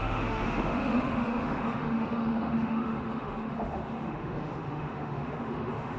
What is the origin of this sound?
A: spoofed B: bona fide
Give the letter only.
A